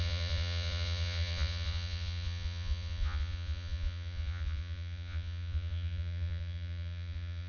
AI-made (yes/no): yes